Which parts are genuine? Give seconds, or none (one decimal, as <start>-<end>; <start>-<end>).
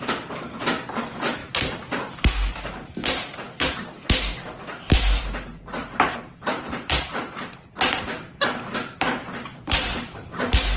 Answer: 0.0-1.4; 2.0-3.0; 4.1-5.8